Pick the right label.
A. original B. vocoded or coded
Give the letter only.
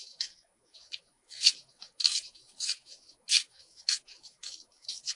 B